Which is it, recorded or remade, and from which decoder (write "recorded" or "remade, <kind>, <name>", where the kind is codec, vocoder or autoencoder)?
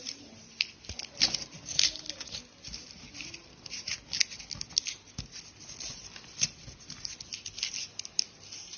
recorded